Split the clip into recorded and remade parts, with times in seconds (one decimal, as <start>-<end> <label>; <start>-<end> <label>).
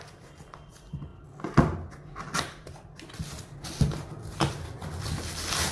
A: 0.0-5.7 recorded